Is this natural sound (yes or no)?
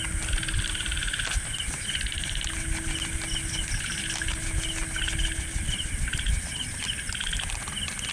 yes